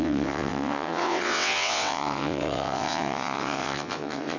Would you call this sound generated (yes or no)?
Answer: yes